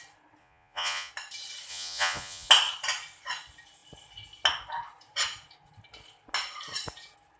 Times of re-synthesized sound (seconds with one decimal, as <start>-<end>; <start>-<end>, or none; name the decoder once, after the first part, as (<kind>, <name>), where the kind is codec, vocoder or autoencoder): 0.4-1.1 (vocoder, Vocos); 1.7-2.5